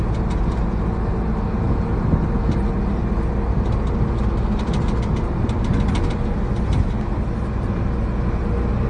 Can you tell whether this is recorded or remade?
recorded